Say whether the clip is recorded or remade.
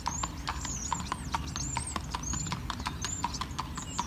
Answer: recorded